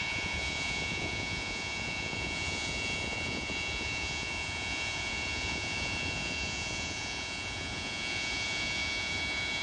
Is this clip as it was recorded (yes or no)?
no